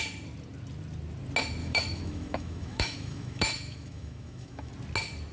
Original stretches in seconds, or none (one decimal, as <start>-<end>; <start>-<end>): 0.0-1.6; 4.7-5.3